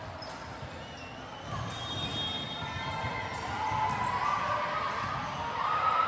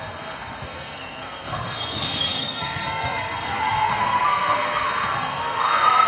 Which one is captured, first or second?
first